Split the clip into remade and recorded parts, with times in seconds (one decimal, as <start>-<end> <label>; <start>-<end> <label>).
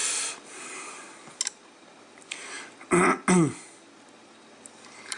0.0-5.2 recorded